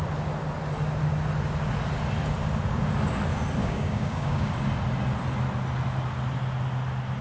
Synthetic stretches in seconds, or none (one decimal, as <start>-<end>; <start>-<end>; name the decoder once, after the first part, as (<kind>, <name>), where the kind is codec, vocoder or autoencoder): 3.6-4.5 (codec, DAC)